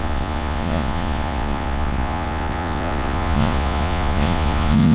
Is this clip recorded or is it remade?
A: remade